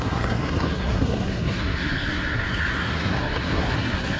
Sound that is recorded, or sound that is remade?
remade